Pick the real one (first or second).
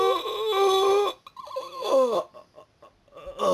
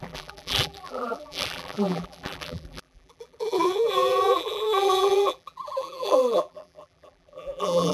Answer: first